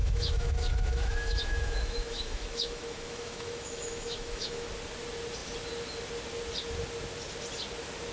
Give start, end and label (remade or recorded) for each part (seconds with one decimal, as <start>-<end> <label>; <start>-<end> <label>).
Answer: 0.0-4.7 remade; 4.7-8.1 recorded